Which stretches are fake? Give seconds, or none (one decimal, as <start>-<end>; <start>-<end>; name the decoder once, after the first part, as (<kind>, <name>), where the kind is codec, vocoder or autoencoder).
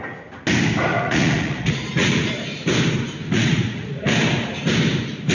0.9-2.3 (vocoder, Vocos); 3.2-4.1